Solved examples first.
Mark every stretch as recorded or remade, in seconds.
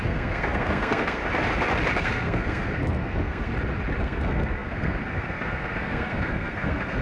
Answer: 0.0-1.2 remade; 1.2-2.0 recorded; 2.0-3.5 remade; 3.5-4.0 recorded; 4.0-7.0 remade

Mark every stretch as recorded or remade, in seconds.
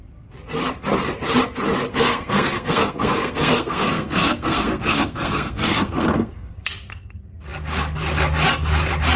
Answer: 0.0-1.9 recorded; 1.9-6.5 remade; 6.5-9.2 recorded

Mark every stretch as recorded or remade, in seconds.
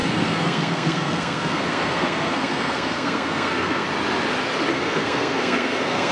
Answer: 0.0-3.9 remade; 3.9-4.7 recorded; 4.7-6.1 remade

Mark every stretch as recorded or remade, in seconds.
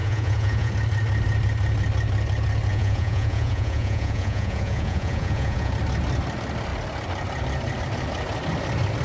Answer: 0.0-0.7 remade; 0.7-2.7 recorded; 2.7-5.7 remade; 5.7-9.0 recorded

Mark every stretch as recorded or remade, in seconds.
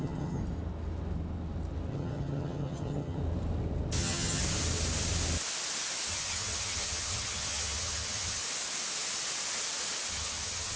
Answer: 0.0-0.4 remade; 0.4-1.9 recorded; 1.9-3.2 remade; 3.2-4.0 recorded; 4.0-4.4 remade; 4.4-6.1 recorded; 6.1-8.4 remade; 8.4-10.1 recorded; 10.1-10.8 remade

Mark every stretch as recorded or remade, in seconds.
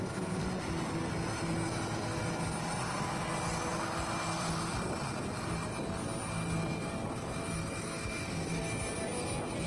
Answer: 0.0-9.7 recorded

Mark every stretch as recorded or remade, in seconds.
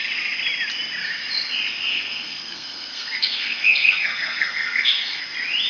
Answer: 0.0-1.9 recorded; 1.9-5.2 remade; 5.2-5.7 recorded